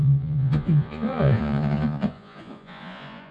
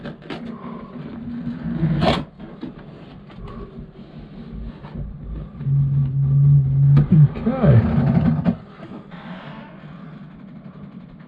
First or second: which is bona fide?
second